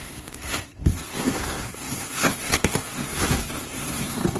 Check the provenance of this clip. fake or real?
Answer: fake